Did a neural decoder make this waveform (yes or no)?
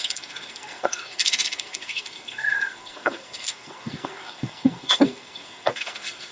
yes